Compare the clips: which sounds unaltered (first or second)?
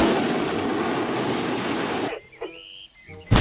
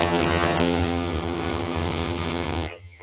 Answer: first